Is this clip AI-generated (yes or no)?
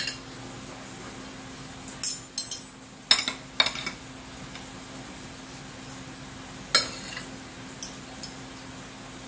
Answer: no